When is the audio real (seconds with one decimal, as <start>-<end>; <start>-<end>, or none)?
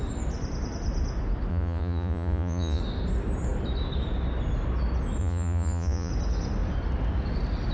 0.0-1.5; 2.8-5.2; 6.1-7.7